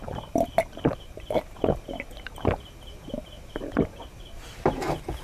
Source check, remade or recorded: remade